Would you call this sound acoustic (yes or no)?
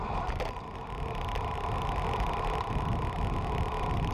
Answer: yes